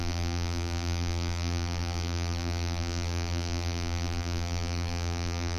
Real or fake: fake